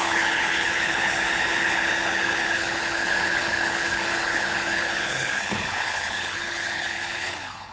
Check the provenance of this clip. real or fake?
fake